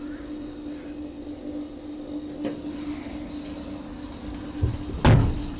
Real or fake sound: real